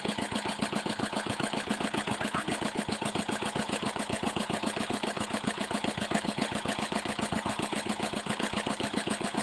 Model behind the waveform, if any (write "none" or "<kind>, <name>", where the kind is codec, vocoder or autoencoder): codec, HILCodec